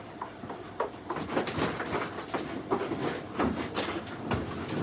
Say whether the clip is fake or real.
real